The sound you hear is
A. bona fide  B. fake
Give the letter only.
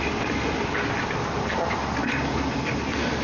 A